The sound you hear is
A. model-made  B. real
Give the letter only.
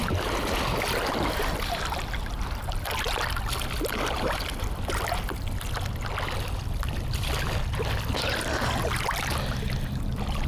B